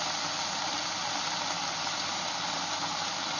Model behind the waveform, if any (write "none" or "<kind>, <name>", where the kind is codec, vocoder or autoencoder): none